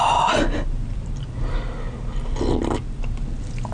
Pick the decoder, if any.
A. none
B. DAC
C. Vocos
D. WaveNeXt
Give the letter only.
A